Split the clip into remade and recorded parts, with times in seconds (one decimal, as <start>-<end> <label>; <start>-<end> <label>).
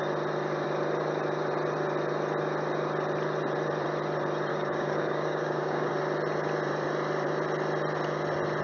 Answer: 0.0-4.5 recorded; 4.5-5.9 remade; 5.9-8.6 recorded